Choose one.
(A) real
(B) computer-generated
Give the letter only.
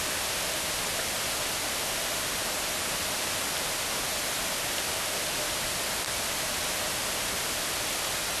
A